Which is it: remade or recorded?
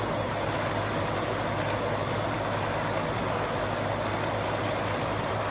recorded